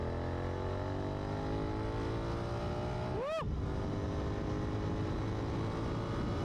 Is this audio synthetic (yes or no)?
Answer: no